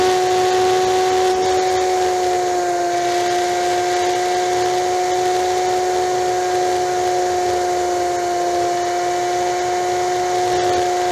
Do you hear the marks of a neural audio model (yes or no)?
no